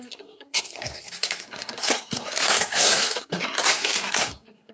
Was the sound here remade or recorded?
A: remade